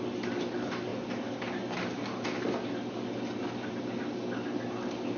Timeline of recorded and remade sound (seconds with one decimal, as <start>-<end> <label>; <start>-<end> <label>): 0.0-5.2 recorded